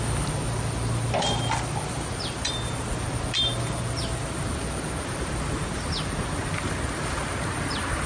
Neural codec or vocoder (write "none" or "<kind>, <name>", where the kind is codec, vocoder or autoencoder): none